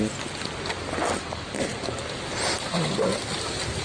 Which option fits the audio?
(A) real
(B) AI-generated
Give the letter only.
A